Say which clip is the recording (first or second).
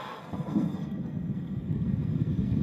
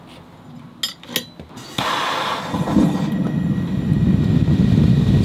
second